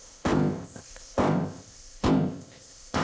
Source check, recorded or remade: remade